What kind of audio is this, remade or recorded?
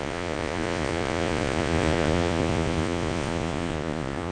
remade